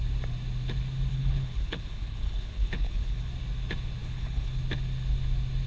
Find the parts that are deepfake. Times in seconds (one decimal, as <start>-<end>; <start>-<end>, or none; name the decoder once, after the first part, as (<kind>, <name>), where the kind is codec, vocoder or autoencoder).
1.1-3.3 (codec, HILCodec); 4.0-4.6